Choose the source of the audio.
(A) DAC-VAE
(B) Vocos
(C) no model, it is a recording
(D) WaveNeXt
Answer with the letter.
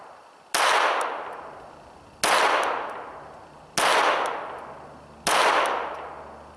C